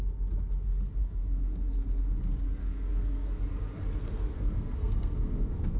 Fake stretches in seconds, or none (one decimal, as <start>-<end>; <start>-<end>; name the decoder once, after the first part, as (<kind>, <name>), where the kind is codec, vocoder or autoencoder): 1.0-2.2 (codec, SNAC); 2.6-3.4; 4.0-5.8